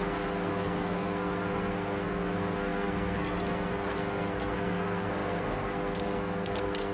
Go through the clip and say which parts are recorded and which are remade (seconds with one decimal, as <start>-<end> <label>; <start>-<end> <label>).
0.0-6.9 remade